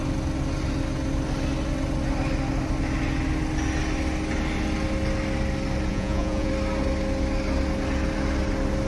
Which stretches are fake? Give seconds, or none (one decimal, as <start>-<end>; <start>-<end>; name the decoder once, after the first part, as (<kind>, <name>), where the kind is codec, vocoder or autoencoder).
5.9-6.5 (vocoder, Vocos)